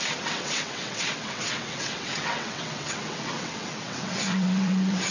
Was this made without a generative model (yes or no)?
no